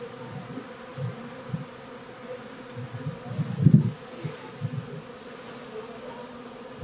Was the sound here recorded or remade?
recorded